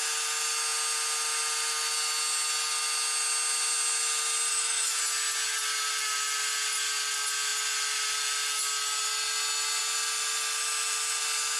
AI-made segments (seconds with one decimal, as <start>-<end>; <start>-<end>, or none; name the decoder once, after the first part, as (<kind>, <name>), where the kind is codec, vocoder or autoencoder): 4.5-5.0 (autoencoder, DAC-VAE)